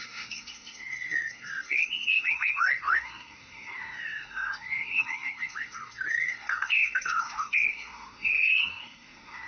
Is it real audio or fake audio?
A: fake